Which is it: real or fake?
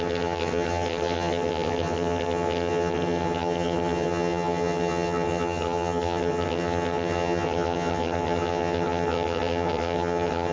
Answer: fake